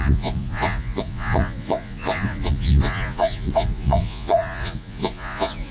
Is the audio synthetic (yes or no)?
yes